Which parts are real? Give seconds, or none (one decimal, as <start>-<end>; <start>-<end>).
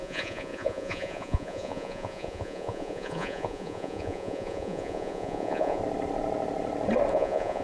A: 5.8-7.1